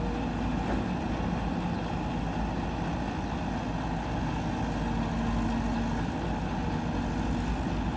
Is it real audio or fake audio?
real